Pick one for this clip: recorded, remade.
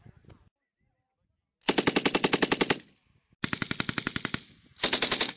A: recorded